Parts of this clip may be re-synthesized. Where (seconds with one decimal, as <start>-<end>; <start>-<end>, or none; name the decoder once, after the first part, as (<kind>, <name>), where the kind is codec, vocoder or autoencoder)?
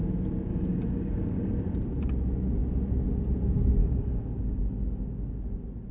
0.5-1.5 (codec, DAC); 3.8-5.1